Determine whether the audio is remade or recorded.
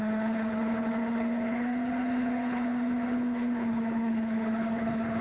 remade